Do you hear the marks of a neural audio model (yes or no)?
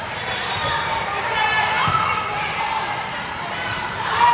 yes